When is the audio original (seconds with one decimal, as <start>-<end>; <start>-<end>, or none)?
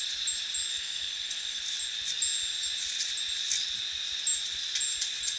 0.0-0.7; 1.6-5.4